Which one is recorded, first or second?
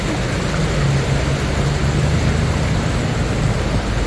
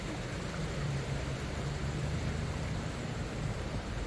first